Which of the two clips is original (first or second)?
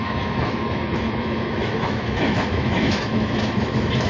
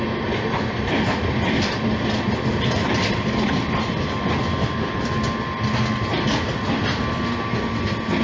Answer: second